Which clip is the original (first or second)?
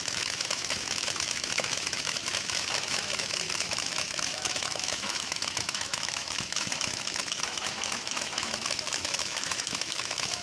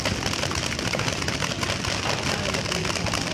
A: second